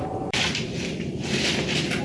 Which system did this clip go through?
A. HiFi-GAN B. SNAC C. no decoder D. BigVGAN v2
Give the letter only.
D